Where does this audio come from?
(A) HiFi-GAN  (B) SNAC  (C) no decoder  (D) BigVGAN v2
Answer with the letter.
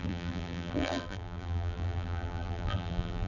D